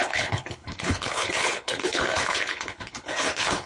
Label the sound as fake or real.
fake